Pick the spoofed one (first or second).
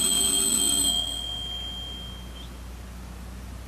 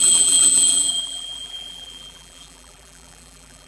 second